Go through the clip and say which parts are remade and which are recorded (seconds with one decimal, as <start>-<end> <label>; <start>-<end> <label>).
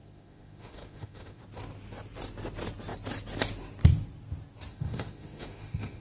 0.0-1.4 remade; 1.4-4.7 recorded; 4.7-6.0 remade